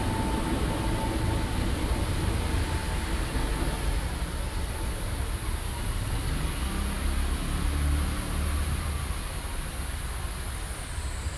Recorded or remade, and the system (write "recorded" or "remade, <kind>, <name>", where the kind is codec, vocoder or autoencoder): recorded